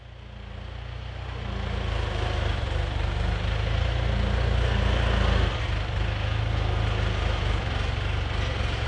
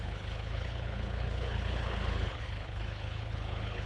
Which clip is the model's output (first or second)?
second